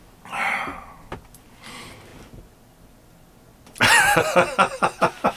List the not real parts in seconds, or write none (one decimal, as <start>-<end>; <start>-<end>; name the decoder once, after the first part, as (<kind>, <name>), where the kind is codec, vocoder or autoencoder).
none